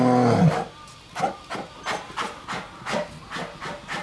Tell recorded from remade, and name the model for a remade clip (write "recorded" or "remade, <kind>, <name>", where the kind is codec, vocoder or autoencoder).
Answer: recorded